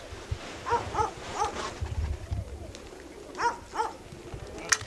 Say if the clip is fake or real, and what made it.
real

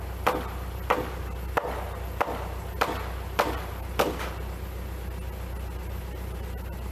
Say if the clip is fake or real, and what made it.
real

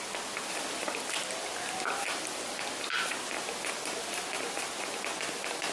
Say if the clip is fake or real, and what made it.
real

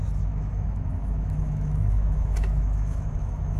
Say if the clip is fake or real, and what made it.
fake, autoencoder, DAC-VAE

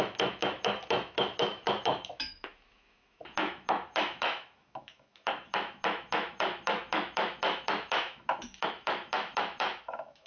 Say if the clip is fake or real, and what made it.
fake, autoencoder, DAC-VAE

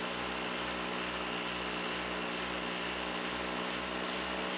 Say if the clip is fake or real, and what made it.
real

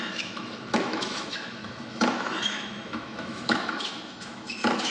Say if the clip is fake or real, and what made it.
fake, autoencoder, DAC-VAE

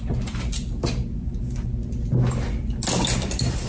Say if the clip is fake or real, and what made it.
real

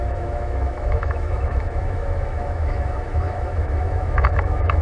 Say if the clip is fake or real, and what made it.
fake, autoencoder, DAC-VAE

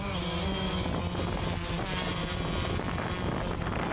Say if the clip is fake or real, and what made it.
real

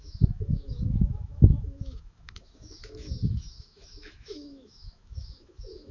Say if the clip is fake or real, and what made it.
fake, autoencoder, DAC-VAE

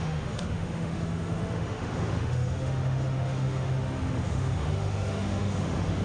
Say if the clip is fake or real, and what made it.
fake, autoencoder, DAC-VAE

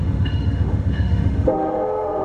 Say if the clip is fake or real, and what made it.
fake, autoencoder, DAC-VAE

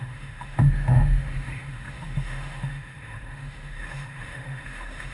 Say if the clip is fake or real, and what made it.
fake, autoencoder, DAC-VAE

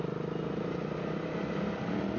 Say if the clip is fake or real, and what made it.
real